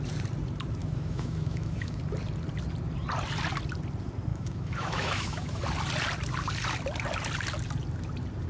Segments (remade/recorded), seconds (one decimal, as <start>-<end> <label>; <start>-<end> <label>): 0.0-0.8 recorded; 0.8-2.0 remade; 2.0-4.3 recorded; 4.3-5.6 remade; 5.6-8.5 recorded